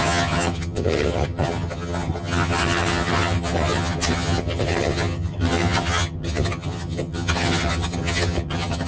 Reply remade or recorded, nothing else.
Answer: remade